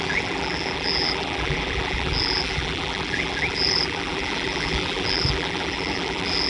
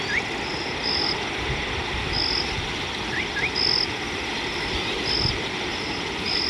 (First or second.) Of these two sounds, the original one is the second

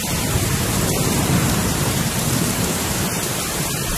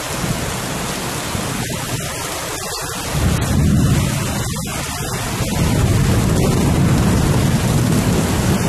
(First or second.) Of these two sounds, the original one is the second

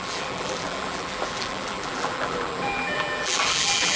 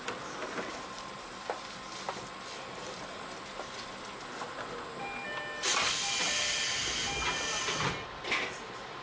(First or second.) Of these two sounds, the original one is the second